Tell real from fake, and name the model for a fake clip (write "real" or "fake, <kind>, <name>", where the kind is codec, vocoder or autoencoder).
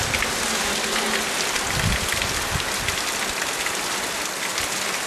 real